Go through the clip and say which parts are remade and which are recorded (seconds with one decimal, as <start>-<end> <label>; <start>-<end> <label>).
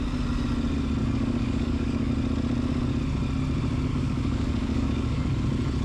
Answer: 0.0-1.0 recorded; 1.0-2.1 remade; 2.1-3.9 recorded; 3.9-5.3 remade; 5.3-5.8 recorded